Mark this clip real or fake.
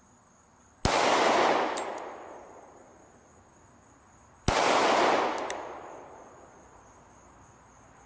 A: real